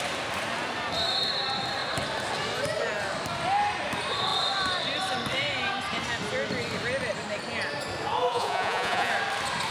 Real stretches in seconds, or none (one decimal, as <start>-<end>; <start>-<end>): 0.0-8.3; 9.1-9.7